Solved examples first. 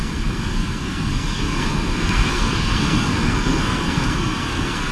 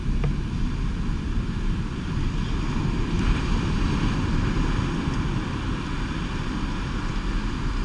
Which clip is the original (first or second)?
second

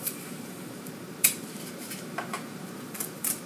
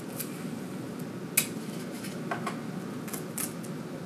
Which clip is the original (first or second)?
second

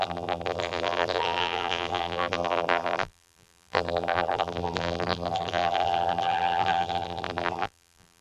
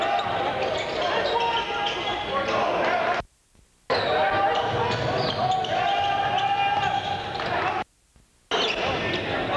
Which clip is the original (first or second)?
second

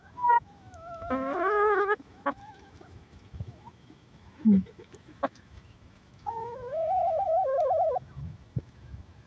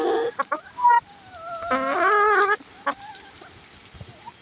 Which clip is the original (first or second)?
second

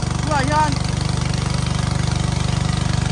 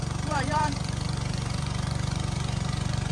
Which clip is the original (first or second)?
first